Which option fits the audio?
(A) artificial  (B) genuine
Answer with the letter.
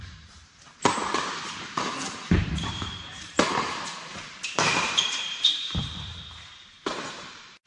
A